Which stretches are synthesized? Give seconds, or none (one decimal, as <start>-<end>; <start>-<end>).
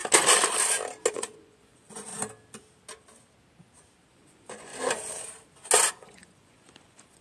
1.1-2.1; 4.1-4.7; 5.9-7.2